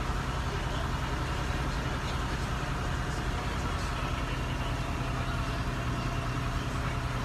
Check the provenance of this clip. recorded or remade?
recorded